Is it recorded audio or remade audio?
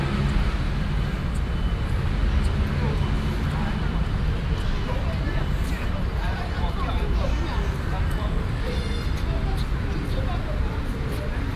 recorded